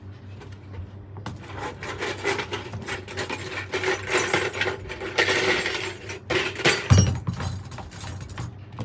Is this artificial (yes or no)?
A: no